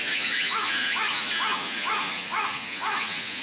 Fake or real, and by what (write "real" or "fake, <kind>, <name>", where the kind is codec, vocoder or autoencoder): fake, vocoder, Vocos